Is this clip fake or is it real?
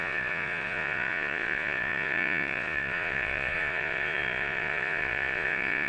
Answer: fake